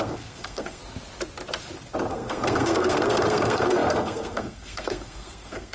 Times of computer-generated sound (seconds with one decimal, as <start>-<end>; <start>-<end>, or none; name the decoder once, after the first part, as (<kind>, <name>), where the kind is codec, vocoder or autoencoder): 0.0-0.8 (codec, SNAC); 2.1-5.7